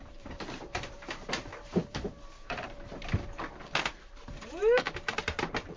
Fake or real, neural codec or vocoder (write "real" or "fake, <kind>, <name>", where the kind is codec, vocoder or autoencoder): fake, vocoder, BigVGAN v2